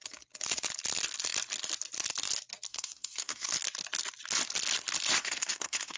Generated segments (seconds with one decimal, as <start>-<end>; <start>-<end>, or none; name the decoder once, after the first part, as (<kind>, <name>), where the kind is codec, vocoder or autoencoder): 2.7-3.5 (codec, SNAC); 5.2-6.0